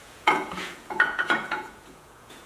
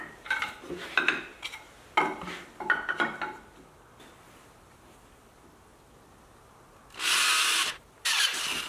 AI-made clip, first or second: first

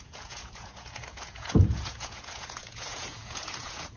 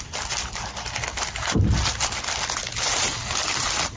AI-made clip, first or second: first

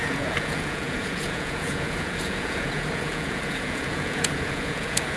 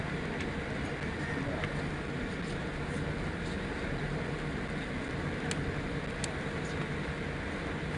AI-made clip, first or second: first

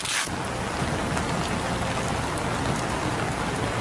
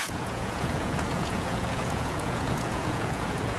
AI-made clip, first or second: second